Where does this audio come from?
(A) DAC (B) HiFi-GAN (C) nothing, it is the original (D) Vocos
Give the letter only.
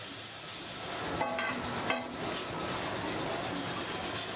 C